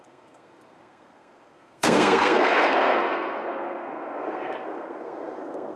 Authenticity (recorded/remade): remade